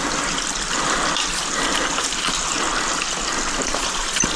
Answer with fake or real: real